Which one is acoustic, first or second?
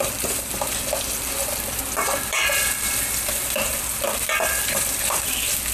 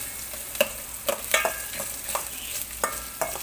second